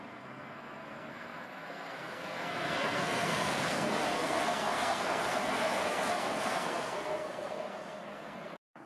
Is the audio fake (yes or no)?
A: yes